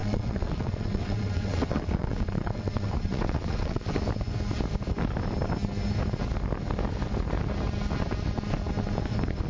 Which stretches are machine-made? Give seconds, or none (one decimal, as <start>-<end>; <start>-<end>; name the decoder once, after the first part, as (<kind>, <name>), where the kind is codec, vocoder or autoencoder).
0.0-4.0 (vocoder, WaveNeXt)